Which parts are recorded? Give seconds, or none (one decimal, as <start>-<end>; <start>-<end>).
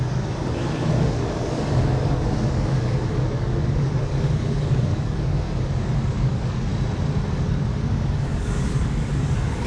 6.7-7.3